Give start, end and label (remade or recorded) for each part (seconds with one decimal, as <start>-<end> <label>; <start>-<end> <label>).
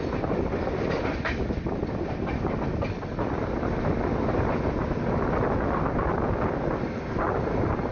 0.0-7.9 recorded